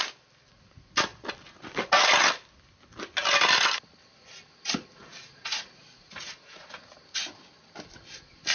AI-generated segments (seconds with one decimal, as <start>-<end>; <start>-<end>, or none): 5.1-6.9